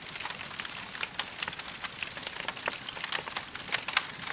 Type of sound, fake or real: real